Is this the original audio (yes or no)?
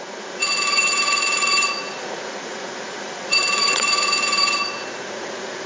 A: no